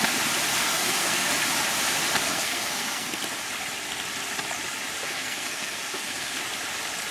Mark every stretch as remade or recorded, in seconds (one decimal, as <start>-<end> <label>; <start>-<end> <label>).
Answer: 0.0-0.5 recorded; 0.5-1.3 remade; 1.3-2.3 recorded; 2.3-3.2 remade; 3.2-5.0 recorded; 5.0-6.4 remade; 6.4-7.1 recorded